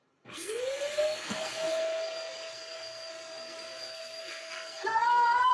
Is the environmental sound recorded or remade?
remade